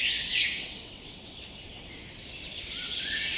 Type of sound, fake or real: fake